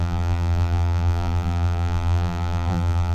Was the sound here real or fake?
fake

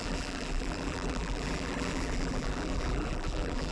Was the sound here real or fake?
fake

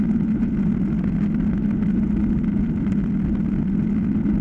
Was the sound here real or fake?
real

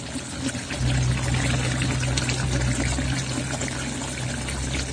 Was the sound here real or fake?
real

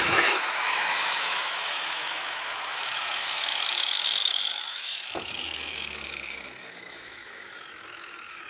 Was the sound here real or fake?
fake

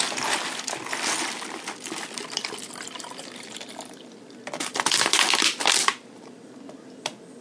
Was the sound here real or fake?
real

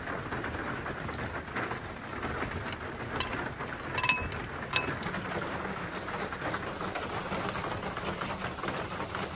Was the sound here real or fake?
real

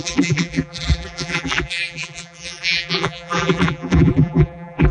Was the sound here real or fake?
fake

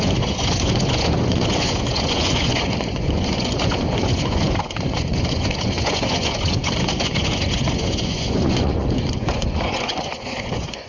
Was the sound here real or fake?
fake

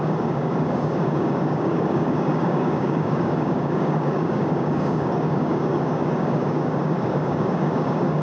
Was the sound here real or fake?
fake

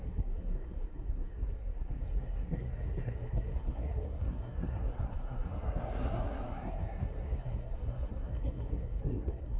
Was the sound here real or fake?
fake